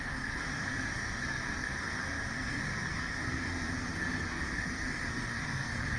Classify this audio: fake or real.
fake